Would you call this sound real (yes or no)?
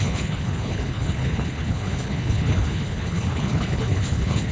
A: no